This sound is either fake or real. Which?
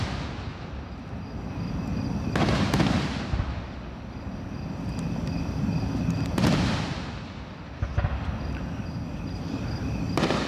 real